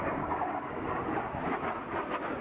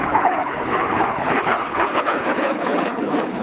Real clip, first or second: first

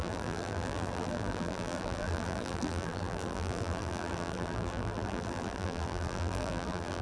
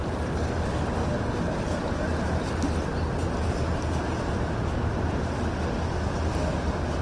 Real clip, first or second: second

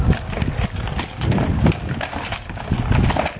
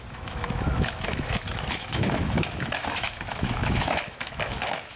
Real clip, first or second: first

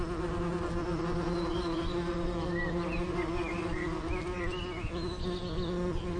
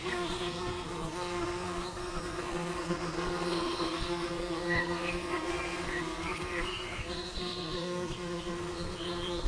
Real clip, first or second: first